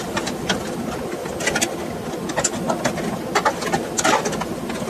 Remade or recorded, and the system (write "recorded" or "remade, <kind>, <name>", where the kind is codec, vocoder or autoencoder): recorded